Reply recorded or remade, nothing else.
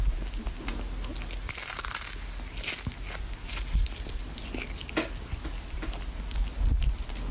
recorded